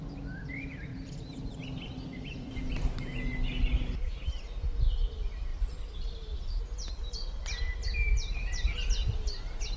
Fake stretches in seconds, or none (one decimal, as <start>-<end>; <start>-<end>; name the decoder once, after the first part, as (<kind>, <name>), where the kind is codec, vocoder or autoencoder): 0.9-1.5 (vocoder, BigVGAN v2); 1.9-2.7; 5.5-6.6